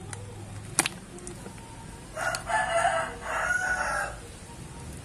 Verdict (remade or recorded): recorded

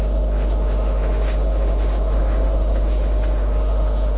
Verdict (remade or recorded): remade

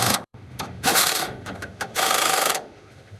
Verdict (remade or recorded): remade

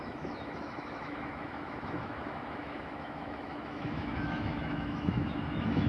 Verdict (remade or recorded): remade